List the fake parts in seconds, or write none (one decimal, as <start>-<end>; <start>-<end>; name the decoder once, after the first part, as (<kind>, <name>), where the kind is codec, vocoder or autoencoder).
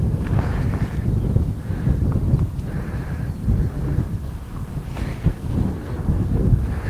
0.0-0.5 (codec, SNAC); 3.4-6.9